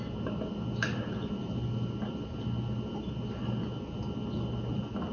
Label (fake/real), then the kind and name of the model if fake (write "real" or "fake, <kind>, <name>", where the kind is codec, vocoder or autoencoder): real